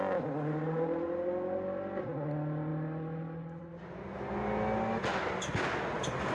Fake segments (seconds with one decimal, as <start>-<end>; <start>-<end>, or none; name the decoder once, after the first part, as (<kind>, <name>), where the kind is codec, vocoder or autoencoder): none